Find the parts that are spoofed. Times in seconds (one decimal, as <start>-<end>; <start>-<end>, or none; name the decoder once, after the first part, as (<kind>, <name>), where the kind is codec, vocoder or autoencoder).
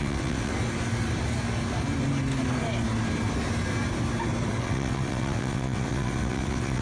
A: 0.0-0.5 (vocoder, WaveNeXt); 4.6-6.8